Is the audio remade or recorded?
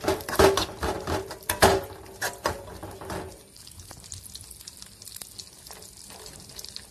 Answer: recorded